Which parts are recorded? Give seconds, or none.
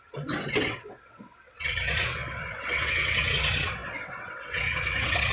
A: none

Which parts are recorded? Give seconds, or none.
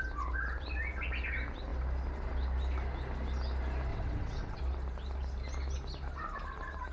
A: 0.0-3.9; 4.6-6.9